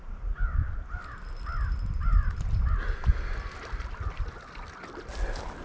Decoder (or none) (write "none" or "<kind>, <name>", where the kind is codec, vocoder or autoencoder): none